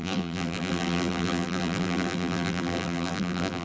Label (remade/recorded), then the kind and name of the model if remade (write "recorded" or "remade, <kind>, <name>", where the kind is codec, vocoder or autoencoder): remade, vocoder, BigVGAN v2